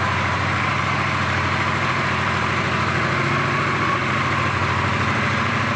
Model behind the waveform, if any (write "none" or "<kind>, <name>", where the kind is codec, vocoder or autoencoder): vocoder, BigVGAN v2